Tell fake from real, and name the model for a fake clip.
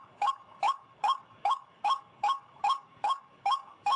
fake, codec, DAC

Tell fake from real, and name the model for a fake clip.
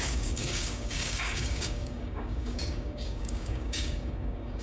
fake, codec, DAC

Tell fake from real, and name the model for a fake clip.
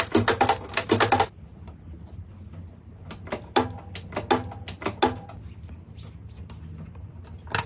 real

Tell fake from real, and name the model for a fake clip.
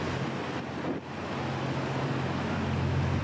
real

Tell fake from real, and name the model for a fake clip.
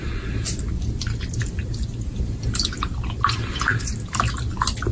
real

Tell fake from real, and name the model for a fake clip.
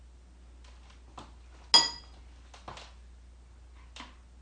real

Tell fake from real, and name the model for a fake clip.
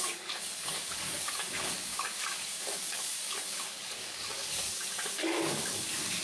fake, codec, DAC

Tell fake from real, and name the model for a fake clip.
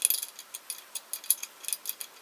real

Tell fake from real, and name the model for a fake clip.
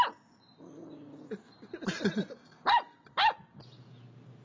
real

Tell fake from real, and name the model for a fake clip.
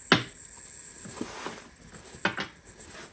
real